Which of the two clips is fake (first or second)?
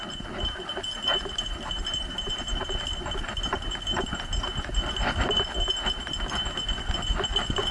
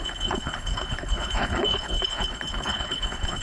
second